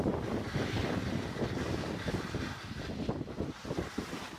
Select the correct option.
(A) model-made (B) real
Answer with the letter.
B